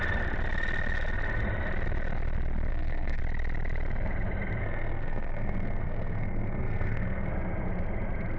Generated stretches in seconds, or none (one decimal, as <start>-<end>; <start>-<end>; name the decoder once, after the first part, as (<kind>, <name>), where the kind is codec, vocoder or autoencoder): 2.7-3.2 (codec, SNAC); 4.6-7.3